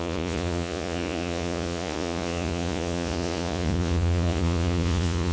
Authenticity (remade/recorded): remade